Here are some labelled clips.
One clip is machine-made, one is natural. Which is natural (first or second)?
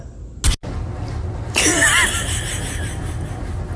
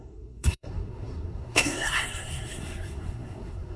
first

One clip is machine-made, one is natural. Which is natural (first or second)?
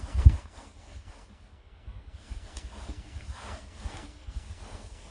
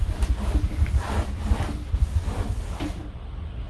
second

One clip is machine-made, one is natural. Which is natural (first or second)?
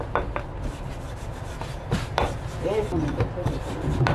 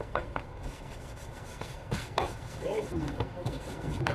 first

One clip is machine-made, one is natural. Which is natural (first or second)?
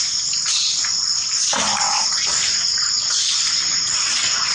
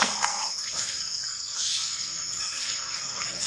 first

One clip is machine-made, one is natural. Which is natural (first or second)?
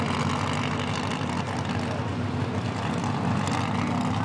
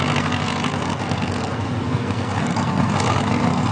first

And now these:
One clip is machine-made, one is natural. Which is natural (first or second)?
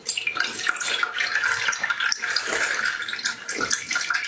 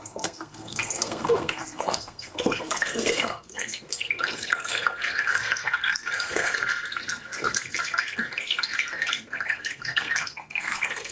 first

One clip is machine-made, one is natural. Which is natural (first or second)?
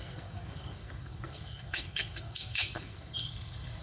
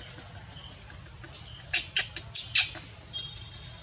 second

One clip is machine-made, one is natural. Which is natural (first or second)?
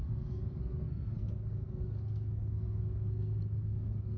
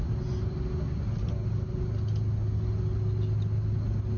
second